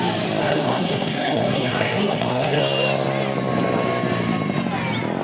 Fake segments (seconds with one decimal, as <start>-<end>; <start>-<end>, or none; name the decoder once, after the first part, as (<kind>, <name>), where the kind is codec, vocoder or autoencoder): 0.4-2.6 (codec, SNAC)